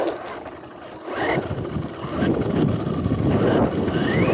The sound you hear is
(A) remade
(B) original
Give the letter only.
B